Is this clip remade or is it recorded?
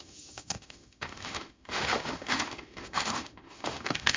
remade